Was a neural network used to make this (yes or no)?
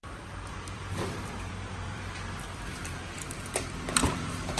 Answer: yes